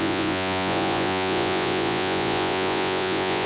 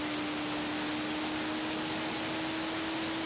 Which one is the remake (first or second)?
first